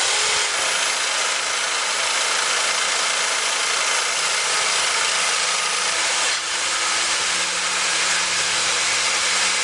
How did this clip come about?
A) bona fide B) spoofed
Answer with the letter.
A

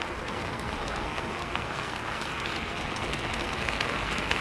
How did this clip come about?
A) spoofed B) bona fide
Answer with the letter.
A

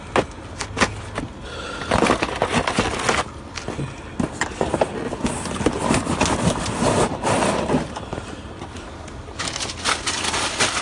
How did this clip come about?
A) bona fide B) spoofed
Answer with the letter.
A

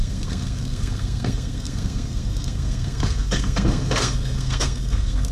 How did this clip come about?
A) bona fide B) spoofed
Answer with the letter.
B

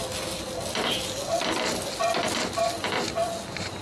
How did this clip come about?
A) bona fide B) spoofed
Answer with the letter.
A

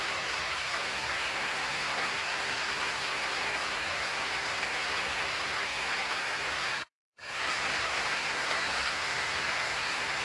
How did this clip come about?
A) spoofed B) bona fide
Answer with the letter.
A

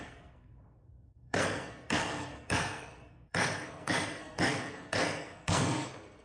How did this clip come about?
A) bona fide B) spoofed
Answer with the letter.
B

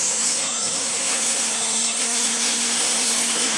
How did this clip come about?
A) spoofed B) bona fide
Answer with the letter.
A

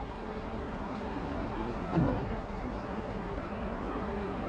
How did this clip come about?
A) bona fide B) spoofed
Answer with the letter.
B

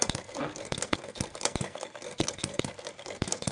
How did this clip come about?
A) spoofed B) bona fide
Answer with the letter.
A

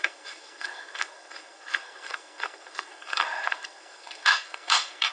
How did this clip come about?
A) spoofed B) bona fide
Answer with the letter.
A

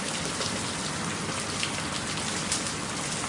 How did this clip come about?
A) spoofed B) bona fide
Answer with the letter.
B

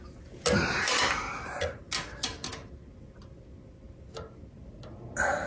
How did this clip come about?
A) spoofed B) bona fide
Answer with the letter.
B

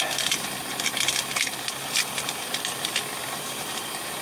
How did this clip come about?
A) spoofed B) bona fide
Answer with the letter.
B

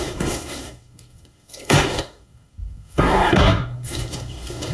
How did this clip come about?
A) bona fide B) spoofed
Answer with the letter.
B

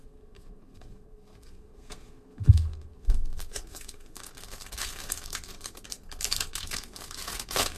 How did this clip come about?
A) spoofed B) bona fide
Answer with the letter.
A